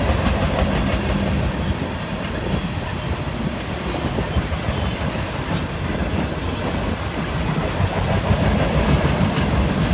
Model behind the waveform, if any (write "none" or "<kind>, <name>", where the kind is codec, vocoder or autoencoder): none